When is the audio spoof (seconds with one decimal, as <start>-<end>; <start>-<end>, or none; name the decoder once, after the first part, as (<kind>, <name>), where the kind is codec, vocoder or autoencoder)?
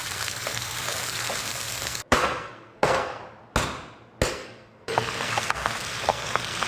0.0-3.2 (codec, SNAC); 4.3-6.7